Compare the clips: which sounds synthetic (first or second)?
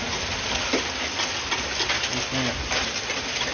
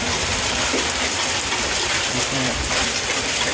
second